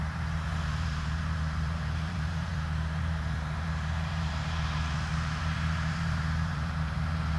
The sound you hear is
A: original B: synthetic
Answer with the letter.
B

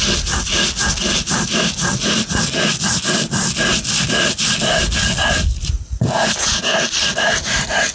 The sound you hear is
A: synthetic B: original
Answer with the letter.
B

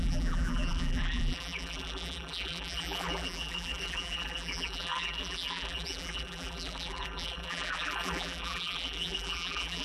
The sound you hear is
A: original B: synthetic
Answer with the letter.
B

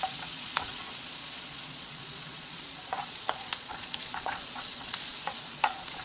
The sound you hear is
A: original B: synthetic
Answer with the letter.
B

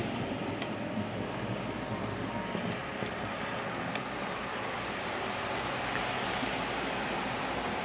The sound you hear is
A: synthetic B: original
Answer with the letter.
B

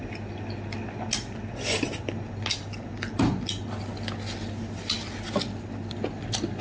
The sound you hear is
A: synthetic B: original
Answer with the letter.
B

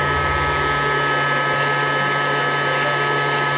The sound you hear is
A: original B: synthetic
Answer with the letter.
A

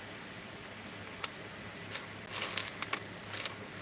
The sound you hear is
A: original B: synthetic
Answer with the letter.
A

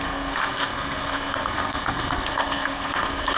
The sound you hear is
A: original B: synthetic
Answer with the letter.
B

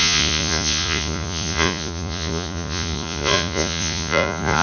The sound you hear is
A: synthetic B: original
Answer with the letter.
A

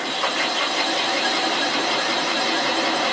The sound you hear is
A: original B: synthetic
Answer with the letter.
B